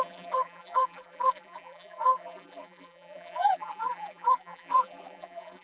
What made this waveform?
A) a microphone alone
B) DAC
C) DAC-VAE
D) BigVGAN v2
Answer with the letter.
D